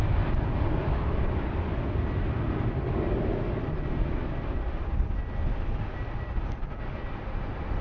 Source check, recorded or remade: recorded